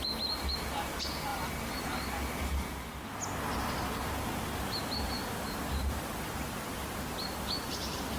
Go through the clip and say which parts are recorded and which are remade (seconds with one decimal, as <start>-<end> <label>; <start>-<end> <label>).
0.0-8.2 recorded